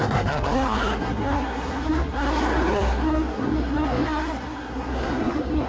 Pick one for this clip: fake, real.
fake